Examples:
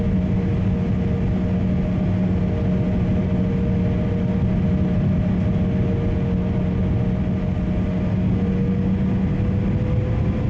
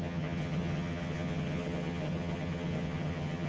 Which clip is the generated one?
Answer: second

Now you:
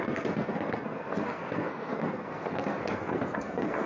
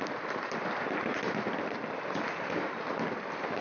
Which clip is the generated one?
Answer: first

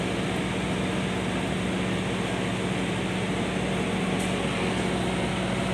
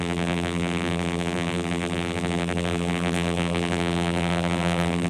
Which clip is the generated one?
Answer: second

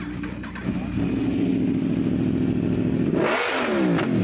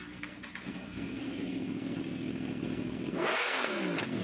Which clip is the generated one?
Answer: second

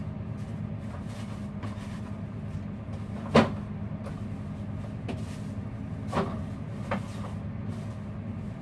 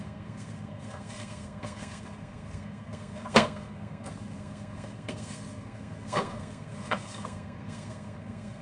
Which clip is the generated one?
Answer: second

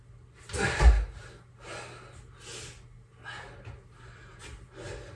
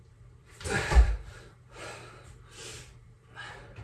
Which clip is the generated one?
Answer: second